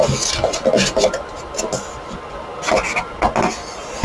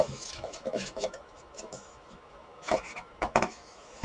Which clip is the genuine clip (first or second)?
first